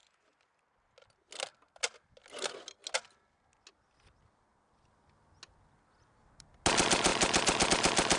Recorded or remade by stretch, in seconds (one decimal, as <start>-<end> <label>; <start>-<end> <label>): 0.0-8.2 recorded